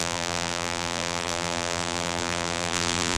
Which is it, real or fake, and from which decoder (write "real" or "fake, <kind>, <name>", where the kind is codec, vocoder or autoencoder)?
fake, vocoder, BigVGAN v2